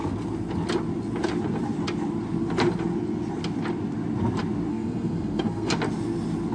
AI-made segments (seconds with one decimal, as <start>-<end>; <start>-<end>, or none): 4.7-5.7